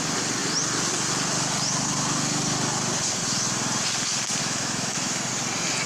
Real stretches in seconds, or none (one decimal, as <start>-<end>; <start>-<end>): 0.0-4.4; 5.3-5.9